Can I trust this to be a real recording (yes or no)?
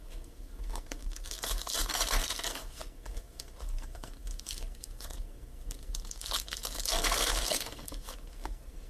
no